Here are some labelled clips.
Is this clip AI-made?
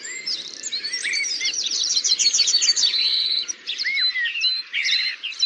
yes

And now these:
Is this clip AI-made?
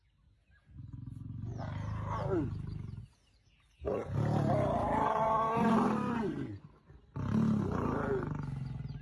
no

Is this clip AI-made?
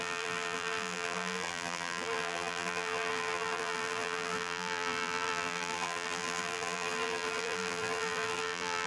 yes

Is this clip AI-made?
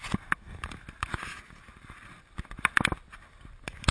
no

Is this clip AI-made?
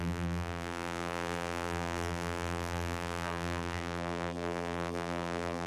yes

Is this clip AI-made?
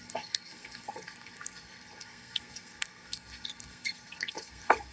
yes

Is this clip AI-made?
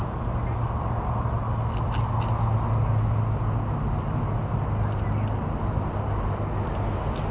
no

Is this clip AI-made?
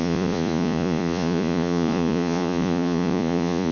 yes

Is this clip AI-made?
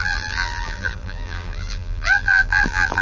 yes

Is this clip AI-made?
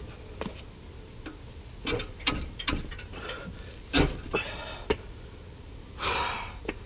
no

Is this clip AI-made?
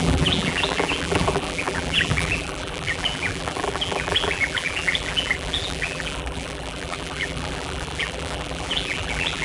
yes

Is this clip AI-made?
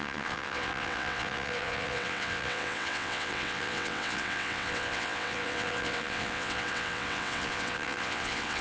yes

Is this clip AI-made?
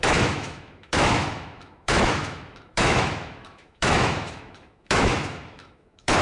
yes